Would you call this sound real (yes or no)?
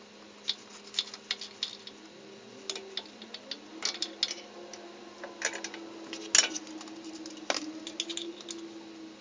yes